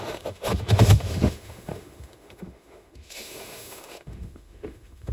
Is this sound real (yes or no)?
no